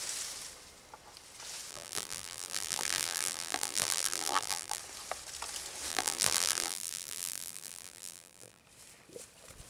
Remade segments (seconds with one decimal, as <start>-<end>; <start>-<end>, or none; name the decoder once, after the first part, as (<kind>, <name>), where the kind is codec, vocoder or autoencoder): 1.7-4.8 (vocoder, BigVGAN v2); 5.9-8.6